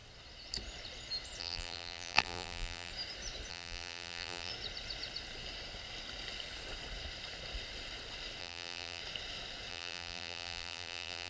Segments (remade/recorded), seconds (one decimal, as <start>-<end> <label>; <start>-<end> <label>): 0.0-1.4 recorded; 1.4-2.9 remade; 2.9-3.5 recorded; 3.5-4.5 remade; 4.5-8.4 recorded; 8.4-9.0 remade; 9.0-9.7 recorded; 9.7-11.3 remade